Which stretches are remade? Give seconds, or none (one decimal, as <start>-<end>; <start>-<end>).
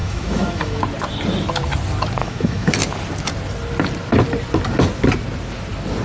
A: 0.0-0.8; 2.2-2.7